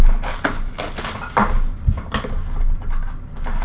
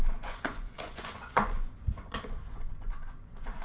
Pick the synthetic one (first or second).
second